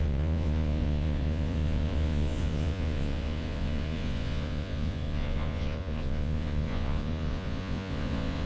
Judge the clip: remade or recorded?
remade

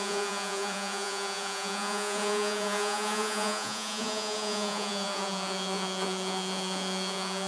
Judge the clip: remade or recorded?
remade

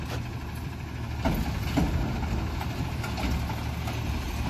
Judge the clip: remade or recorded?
recorded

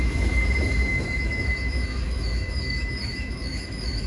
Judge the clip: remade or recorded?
remade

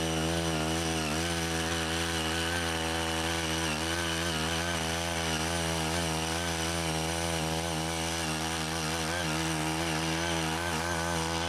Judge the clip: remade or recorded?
recorded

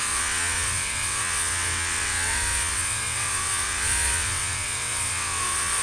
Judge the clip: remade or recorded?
remade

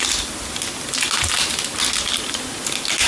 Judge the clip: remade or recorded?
recorded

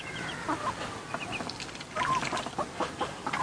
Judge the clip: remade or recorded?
recorded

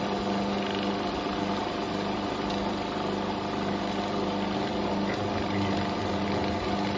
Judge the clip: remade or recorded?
recorded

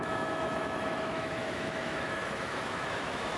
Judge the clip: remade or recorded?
remade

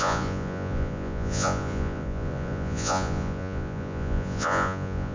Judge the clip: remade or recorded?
remade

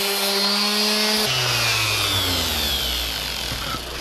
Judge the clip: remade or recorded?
recorded